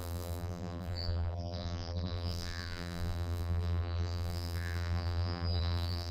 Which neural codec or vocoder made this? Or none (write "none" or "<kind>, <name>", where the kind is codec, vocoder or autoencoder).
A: vocoder, BigVGAN v2